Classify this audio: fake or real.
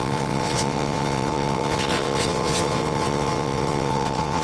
fake